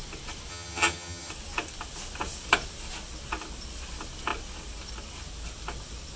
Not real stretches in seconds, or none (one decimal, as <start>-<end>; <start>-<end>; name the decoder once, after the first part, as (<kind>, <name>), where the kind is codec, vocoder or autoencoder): 0.5-1.3 (vocoder, HiFi-GAN)